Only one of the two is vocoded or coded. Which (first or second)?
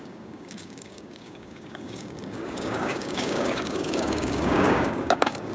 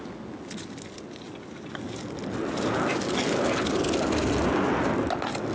first